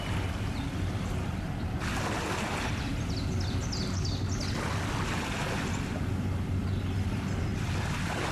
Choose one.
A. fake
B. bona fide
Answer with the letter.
B